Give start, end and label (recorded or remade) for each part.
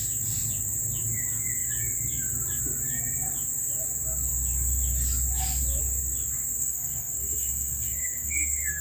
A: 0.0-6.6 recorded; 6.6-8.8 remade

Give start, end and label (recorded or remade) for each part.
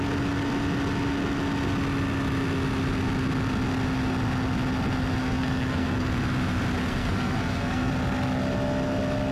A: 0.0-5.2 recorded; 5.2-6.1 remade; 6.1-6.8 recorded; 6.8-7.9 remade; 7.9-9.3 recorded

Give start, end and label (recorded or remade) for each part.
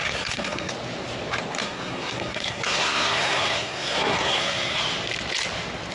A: 0.0-0.7 remade; 0.7-1.6 recorded; 1.6-4.8 remade; 4.8-5.9 recorded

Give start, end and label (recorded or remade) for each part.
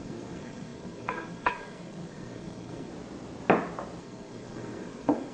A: 0.0-2.9 remade; 2.9-4.0 recorded; 4.0-5.3 remade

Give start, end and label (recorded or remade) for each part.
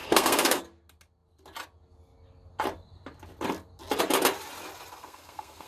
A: 0.0-0.6 remade; 0.6-4.9 recorded; 4.9-5.7 remade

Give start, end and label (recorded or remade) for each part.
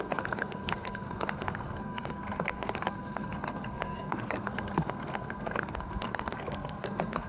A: 0.0-7.3 remade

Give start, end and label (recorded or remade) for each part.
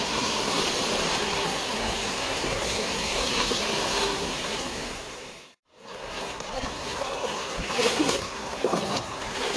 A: 0.0-0.6 remade; 0.6-1.2 recorded; 1.2-9.6 remade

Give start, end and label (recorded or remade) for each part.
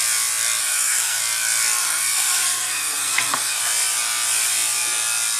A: 0.0-0.6 recorded; 0.6-1.2 remade; 1.2-1.8 recorded; 1.8-3.6 remade; 3.6-5.4 recorded